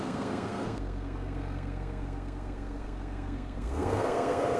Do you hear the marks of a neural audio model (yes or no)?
yes